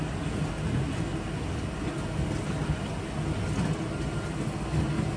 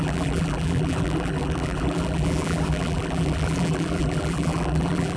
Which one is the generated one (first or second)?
second